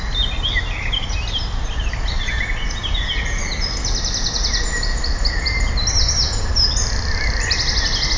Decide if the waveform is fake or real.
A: real